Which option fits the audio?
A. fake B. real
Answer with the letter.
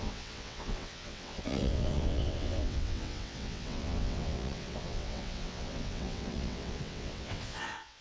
A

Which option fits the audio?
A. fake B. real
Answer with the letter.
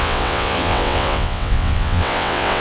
A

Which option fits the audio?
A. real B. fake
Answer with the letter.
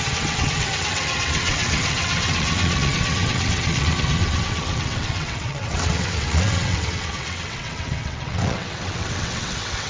B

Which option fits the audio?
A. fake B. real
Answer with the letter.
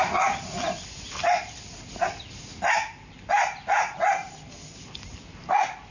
B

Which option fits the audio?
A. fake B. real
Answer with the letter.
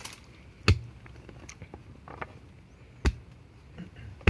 B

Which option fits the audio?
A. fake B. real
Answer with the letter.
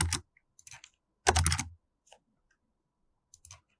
B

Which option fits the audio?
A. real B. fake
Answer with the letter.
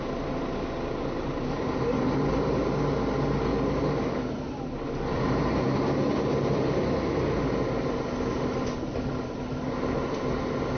A